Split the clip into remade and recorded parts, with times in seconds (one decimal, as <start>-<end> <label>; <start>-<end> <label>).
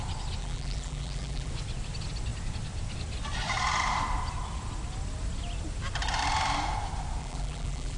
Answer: 0.0-0.4 recorded; 0.4-1.5 remade; 1.5-7.2 recorded; 7.2-8.0 remade